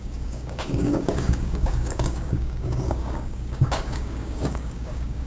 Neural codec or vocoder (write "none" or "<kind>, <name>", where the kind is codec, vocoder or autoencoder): codec, DAC